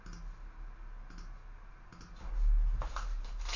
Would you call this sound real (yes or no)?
yes